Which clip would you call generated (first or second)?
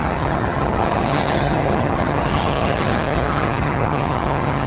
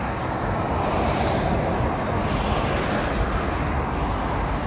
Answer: first